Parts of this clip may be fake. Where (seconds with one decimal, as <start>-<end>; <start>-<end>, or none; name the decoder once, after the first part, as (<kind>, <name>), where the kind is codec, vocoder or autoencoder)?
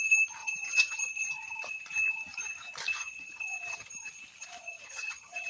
0.4-1.0 (vocoder, HiFi-GAN); 3.0-4.1; 4.7-5.5